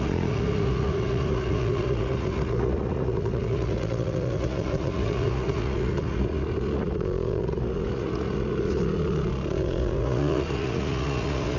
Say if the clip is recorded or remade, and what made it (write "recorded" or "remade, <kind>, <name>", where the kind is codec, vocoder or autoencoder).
remade, vocoder, Vocos